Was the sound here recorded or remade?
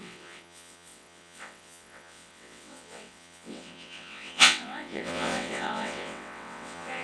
remade